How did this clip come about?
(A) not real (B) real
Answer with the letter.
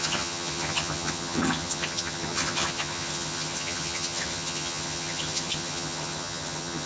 A